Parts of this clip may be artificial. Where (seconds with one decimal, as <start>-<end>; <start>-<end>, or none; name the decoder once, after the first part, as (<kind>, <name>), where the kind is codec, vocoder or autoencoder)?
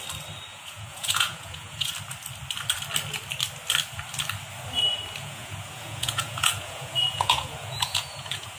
0.5-1.9 (vocoder, Vocos); 5.2-8.6